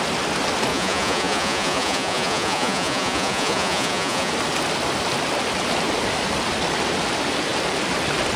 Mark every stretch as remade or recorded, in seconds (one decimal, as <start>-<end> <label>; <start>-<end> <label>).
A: 0.0-0.7 recorded; 0.7-4.3 remade; 4.3-8.4 recorded